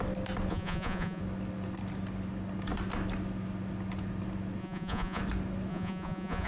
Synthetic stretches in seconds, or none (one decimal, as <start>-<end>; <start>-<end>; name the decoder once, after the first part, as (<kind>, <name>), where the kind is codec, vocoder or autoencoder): 0.5-1.2 (vocoder, Vocos); 4.6-5.2; 5.7-6.5